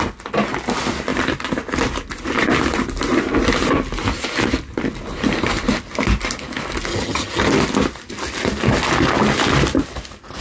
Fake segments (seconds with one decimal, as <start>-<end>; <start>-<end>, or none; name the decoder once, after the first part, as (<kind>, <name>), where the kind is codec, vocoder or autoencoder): 6.9-7.5 (vocoder, HiFi-GAN)